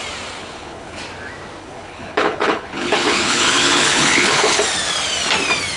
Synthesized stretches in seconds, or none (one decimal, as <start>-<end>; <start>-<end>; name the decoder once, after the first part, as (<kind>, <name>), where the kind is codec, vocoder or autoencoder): 0.4-1.0 (codec, HILCodec); 1.6-4.6